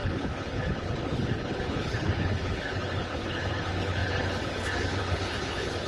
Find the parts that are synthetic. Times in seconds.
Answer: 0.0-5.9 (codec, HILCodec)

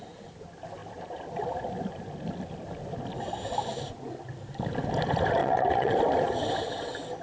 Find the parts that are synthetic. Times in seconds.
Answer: 5.4-5.9 (vocoder, WaveNeXt)

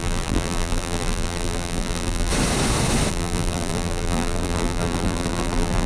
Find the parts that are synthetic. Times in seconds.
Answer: 0.0-2.3 (vocoder, BigVGAN v2); 3.1-5.9

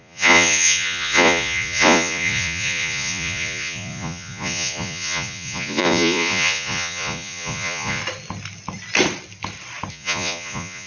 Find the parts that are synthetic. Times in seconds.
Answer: 0.0-8.0 (vocoder, Vocos); 9.9-10.9

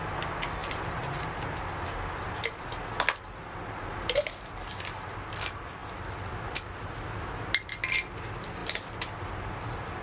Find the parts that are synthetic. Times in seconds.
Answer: none

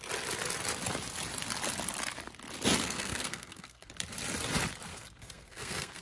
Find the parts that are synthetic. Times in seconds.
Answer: 2.8-3.9 (codec, SNAC); 4.9-6.0

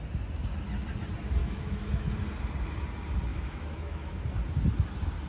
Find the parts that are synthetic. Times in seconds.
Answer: 1.4-2.1 (autoencoder, DAC-VAE); 3.3-4.2

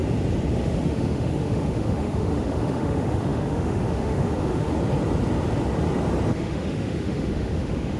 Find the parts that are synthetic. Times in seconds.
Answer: 0.6-4.7 (autoencoder, DAC-VAE); 6.3-8.0